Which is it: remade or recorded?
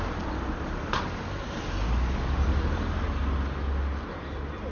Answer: recorded